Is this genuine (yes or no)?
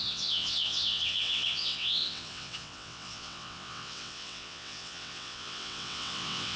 no